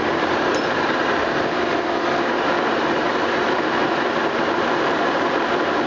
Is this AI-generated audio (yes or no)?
yes